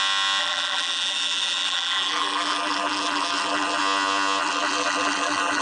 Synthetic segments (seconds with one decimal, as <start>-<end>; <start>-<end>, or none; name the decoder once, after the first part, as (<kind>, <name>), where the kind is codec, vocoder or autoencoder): 0.4-3.8 (vocoder, BigVGAN v2); 4.4-5.6